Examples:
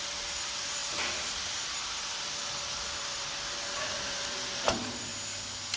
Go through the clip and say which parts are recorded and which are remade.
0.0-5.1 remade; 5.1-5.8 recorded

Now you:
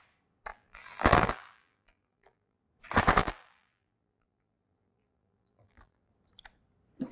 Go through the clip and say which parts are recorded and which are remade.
0.0-0.5 recorded; 0.5-2.6 remade; 2.6-3.2 recorded; 3.2-6.1 remade; 6.1-7.1 recorded

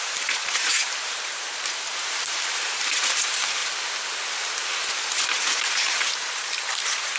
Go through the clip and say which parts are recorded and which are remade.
0.0-3.6 remade; 3.6-4.8 recorded; 4.8-7.2 remade

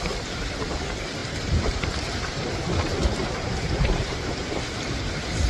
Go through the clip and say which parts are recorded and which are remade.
0.0-1.2 recorded; 1.2-4.5 remade; 4.5-5.5 recorded